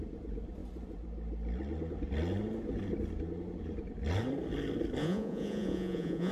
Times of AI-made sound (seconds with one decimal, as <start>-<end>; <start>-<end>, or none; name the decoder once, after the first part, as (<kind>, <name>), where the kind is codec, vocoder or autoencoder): 5.0-6.3 (vocoder, Vocos)